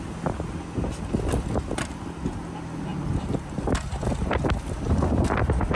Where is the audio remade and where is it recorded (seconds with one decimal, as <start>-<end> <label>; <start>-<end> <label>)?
0.0-5.8 recorded